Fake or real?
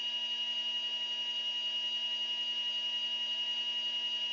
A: real